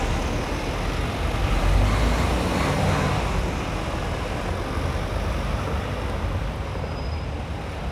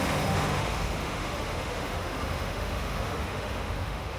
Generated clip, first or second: second